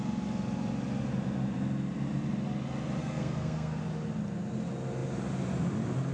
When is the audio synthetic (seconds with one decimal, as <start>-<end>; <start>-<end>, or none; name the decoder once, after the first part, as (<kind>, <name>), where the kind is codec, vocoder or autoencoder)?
3.0-3.8 (codec, SNAC)